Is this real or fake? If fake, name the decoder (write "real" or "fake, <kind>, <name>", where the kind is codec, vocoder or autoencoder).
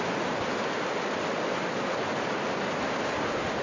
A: real